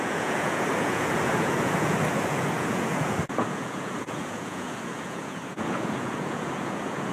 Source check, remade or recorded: remade